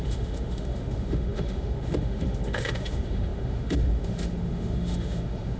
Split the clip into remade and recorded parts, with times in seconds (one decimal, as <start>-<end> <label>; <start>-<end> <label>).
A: 0.0-5.6 remade